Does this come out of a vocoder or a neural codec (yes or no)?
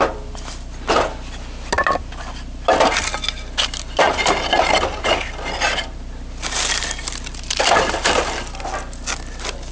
no